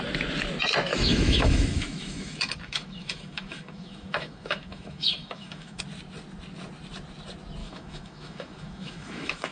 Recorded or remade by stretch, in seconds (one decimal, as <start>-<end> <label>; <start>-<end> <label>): 0.0-0.9 recorded; 0.9-5.8 remade; 5.8-7.6 recorded; 7.6-9.5 remade

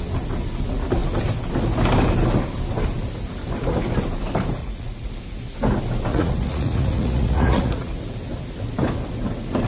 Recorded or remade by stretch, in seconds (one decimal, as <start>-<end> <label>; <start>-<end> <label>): 0.0-4.6 recorded; 4.6-5.1 remade; 5.1-6.1 recorded; 6.1-8.0 remade; 8.0-9.7 recorded

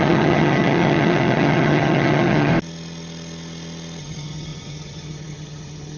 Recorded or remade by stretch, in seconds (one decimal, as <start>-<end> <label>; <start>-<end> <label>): 0.0-2.5 remade; 2.5-4.0 recorded; 4.0-6.0 remade

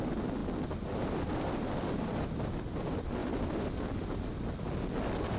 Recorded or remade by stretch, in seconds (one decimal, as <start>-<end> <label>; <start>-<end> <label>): 0.0-0.4 recorded; 0.4-2.4 remade; 2.4-3.2 recorded; 3.2-3.8 remade; 3.8-5.4 recorded

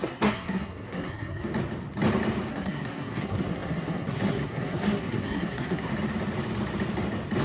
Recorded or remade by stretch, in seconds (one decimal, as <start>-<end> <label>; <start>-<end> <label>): 0.0-1.5 remade; 1.5-2.5 recorded; 2.5-5.9 remade; 5.9-7.4 recorded

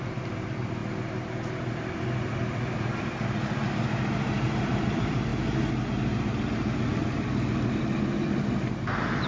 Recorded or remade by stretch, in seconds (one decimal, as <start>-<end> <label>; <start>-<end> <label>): 0.0-0.8 remade; 0.8-1.7 recorded; 1.7-5.3 remade; 5.3-7.7 recorded; 7.7-9.3 remade